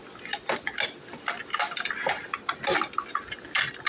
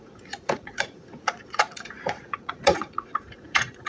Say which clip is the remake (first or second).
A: second